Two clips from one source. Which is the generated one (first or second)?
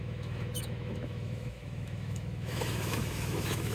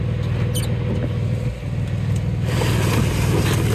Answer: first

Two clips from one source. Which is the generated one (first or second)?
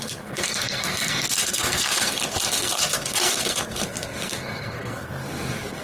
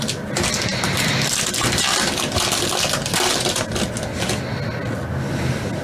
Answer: first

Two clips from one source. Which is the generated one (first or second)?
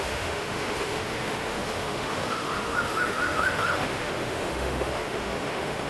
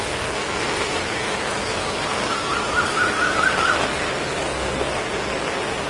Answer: first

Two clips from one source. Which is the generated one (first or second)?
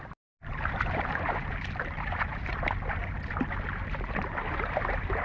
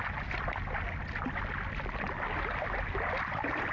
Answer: first